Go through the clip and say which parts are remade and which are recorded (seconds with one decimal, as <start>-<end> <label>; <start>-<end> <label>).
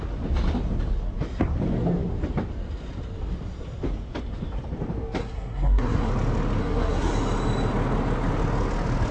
0.0-5.2 recorded; 5.2-6.1 remade; 6.1-6.6 recorded; 6.6-7.1 remade; 7.1-9.1 recorded